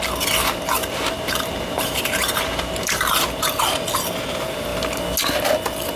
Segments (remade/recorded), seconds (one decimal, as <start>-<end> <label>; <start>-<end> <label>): 0.0-0.8 recorded; 0.8-3.6 remade; 3.6-6.0 recorded